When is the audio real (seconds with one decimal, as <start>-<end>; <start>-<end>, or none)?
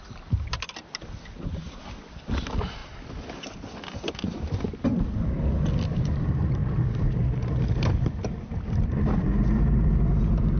0.0-10.6